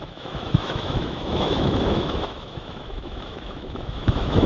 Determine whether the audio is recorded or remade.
remade